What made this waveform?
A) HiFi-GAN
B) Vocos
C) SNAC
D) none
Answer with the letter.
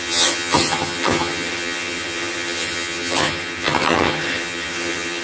A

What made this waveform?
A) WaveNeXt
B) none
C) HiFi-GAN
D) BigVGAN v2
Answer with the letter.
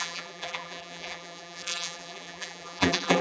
D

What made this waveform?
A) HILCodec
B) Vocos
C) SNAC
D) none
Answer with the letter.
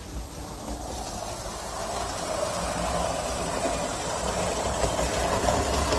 D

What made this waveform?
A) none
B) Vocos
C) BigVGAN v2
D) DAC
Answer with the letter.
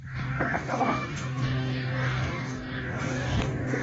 D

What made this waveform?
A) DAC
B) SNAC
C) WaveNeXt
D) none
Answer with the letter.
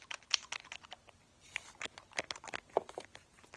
D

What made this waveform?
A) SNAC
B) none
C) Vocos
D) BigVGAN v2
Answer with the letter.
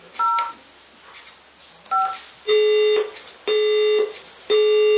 B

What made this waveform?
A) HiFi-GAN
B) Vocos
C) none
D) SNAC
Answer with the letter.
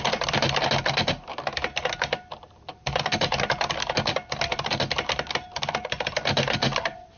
C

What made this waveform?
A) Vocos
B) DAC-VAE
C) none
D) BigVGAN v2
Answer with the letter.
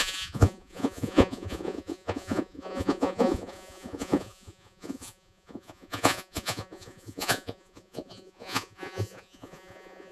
A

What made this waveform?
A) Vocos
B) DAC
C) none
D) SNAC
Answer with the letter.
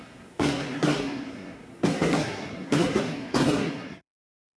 D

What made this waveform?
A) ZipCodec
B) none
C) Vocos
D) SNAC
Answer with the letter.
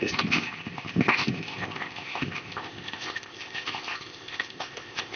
A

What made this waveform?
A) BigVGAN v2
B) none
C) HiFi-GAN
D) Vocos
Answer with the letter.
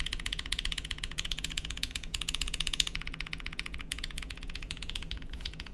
D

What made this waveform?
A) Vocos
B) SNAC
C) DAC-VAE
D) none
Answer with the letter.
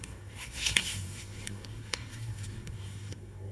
B